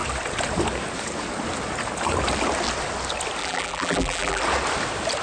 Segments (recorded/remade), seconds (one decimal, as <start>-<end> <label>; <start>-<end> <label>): 0.0-3.4 recorded; 3.4-4.4 remade; 4.4-5.2 recorded